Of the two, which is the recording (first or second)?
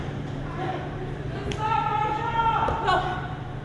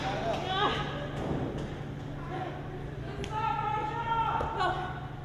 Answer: second